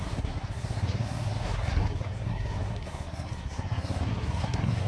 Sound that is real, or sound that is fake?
fake